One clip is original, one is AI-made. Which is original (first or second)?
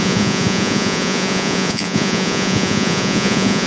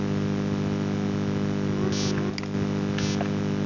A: second